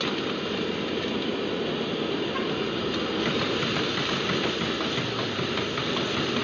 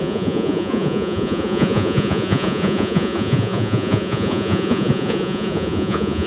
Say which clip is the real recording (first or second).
first